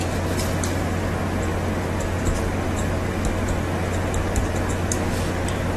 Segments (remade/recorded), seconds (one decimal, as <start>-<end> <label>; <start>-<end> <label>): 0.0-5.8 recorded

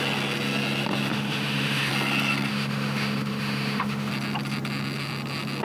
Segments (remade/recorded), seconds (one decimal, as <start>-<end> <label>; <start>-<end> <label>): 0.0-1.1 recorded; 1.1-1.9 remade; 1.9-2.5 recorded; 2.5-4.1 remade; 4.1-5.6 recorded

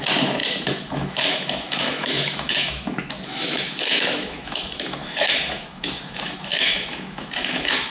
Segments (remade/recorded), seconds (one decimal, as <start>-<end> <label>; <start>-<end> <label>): 0.0-7.9 remade